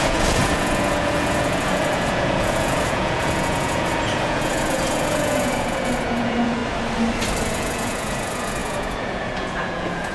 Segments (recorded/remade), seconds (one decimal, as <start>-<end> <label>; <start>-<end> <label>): 0.0-6.6 remade; 6.6-7.4 recorded; 7.4-10.1 remade